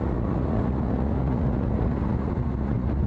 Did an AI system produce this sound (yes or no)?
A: yes